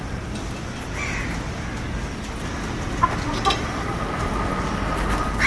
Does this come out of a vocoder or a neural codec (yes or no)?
no